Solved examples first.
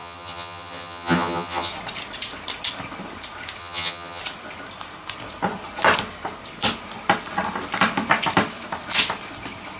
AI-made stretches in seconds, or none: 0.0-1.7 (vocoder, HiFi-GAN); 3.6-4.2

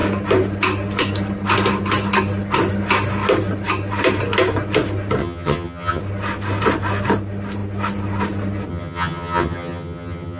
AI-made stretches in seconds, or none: 5.2-6.0 (vocoder, HiFi-GAN); 8.7-10.4

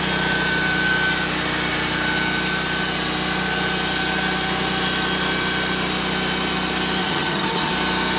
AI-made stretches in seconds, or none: 7.0-7.7 (vocoder, HiFi-GAN)

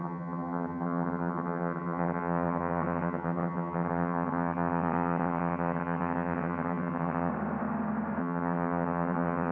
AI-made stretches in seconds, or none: 0.0-7.3 (vocoder, HiFi-GAN); 8.2-9.5

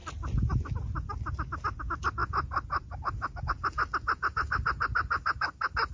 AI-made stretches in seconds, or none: none

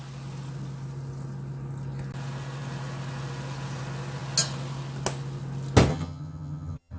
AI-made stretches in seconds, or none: 5.9-7.0 (vocoder, HiFi-GAN)

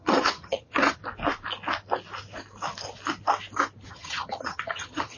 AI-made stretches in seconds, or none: 0.0-1.0 (vocoder, HiFi-GAN); 3.9-5.2